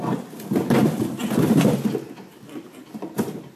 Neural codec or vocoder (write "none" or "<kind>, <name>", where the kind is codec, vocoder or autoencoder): none